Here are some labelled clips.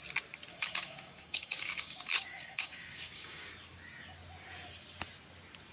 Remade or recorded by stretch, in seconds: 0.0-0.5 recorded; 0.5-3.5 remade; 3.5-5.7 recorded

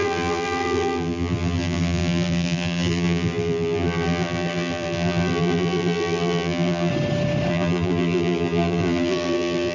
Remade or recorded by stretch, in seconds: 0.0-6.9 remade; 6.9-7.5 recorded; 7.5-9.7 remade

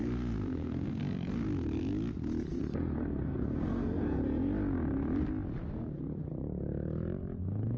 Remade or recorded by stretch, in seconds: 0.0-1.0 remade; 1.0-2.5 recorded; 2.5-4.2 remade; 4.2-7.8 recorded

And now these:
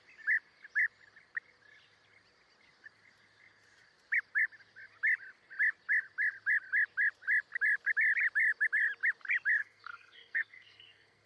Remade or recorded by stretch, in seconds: 0.0-9.6 recorded; 9.6-11.3 remade

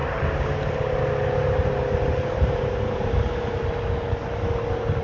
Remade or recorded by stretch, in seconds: 0.0-5.0 recorded

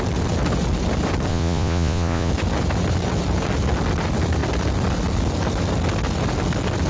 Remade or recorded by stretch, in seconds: 0.0-1.3 recorded; 1.3-2.3 remade; 2.3-6.9 recorded